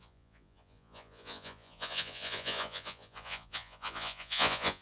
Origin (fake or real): fake